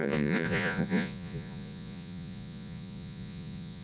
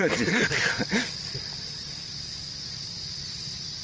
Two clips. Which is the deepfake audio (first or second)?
first